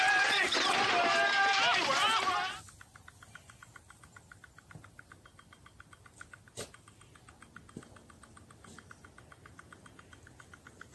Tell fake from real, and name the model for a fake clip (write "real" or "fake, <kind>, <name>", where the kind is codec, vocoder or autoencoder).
real